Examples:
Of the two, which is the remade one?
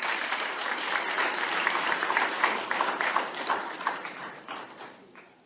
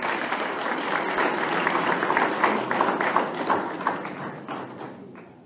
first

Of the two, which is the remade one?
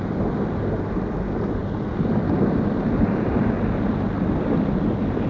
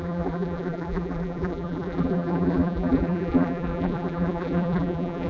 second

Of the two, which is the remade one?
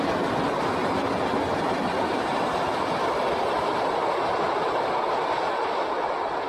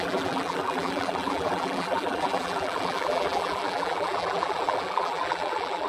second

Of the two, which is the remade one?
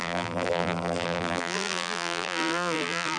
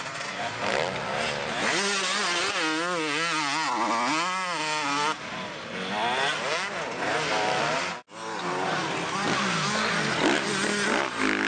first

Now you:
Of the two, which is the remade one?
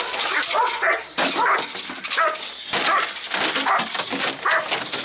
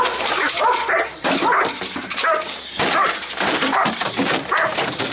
second